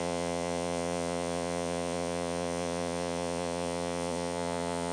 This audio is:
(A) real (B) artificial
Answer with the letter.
B